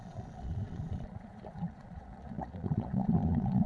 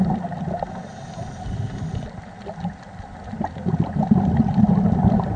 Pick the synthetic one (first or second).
first